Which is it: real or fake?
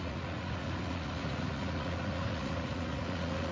fake